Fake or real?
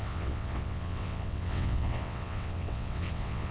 fake